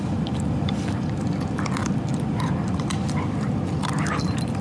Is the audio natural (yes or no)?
no